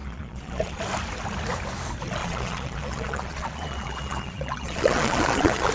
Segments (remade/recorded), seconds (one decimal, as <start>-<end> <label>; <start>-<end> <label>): 0.0-0.8 remade; 0.8-2.2 recorded; 2.2-5.7 remade